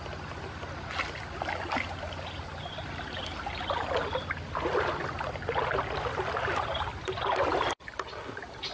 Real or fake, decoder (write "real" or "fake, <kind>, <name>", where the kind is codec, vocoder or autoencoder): real